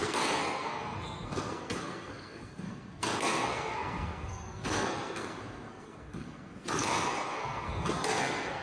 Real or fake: fake